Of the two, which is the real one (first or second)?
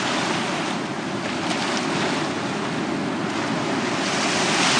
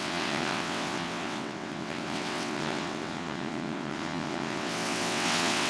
first